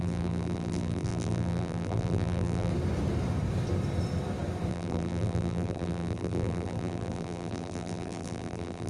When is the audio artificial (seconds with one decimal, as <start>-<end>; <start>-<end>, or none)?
0.0-2.7; 4.7-8.9